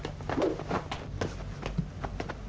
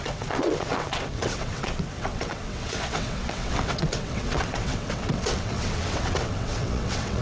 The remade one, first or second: second